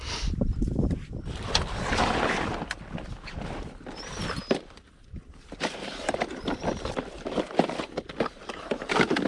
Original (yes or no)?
no